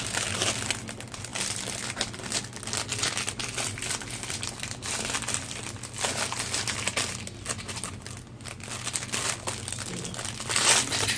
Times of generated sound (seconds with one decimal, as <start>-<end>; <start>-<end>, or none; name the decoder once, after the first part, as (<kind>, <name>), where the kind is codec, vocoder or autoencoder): none